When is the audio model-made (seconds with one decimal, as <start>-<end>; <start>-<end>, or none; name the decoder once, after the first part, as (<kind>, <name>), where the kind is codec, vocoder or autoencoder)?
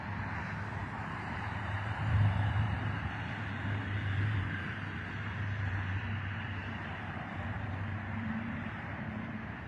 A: 0.8-6.0 (vocoder, BigVGAN v2); 6.6-9.7